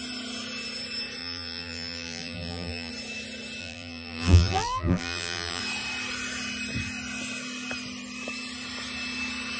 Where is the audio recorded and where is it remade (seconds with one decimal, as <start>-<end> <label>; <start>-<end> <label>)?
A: 0.0-1.2 recorded; 1.2-2.9 remade; 2.9-3.6 recorded; 3.6-5.6 remade; 5.6-9.6 recorded